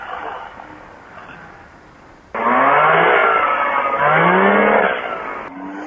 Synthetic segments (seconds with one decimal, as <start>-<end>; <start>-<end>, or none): none